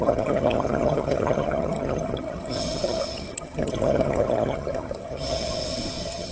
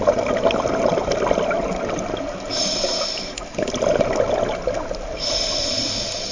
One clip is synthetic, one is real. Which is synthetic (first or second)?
first